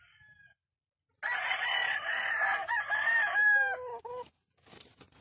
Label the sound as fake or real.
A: real